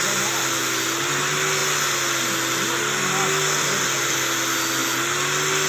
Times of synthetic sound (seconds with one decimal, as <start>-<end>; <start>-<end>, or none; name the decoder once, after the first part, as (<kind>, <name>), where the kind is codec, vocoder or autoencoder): none